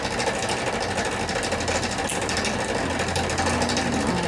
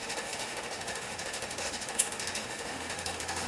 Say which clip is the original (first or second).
first